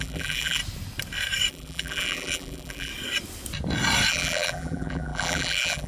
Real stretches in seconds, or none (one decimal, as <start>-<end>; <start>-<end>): 0.6-1.5; 2.9-4.1

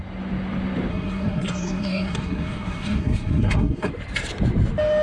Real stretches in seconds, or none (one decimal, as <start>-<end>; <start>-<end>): 0.0-0.9; 3.9-5.0

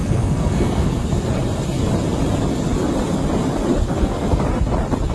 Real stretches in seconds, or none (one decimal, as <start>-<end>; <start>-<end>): 1.1-3.7; 4.4-5.1

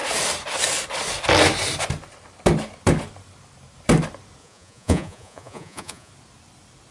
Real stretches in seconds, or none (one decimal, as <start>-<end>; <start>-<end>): 0.0-4.4; 6.1-6.9

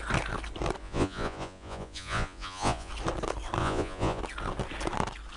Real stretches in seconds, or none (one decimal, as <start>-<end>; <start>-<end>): 0.0-0.8; 2.9-3.6; 4.2-5.4

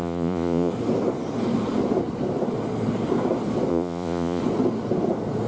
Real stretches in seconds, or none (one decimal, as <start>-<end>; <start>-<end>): 0.7-3.7; 4.4-5.5

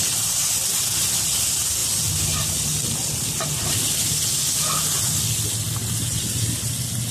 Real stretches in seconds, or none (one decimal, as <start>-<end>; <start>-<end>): 0.0-7.1